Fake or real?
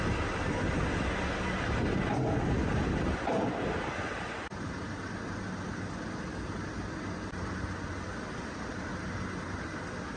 real